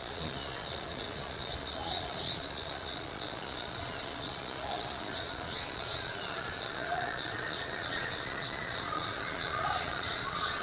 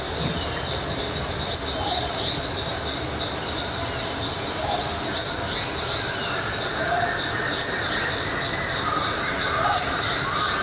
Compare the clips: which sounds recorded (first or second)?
second